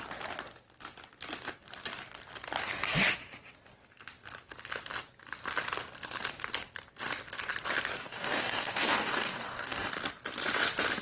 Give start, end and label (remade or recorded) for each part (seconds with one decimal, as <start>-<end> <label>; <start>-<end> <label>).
0.0-8.0 recorded; 8.0-9.9 remade; 9.9-11.0 recorded